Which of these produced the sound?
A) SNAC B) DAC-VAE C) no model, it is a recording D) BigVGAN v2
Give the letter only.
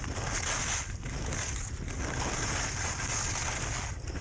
C